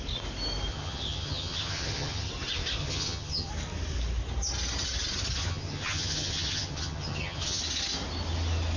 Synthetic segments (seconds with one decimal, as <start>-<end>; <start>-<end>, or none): 0.7-2.3; 2.8-3.5; 5.4-7.6

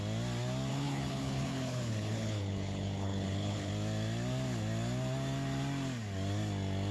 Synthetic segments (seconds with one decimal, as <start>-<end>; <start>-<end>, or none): 0.7-3.7